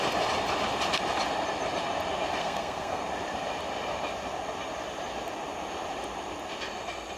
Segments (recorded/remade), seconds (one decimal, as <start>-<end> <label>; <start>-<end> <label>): 0.0-2.4 recorded; 2.4-3.0 remade; 3.0-7.2 recorded